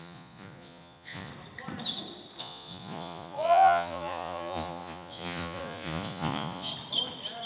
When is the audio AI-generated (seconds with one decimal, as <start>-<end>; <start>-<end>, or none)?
0.0-1.3; 2.4-6.7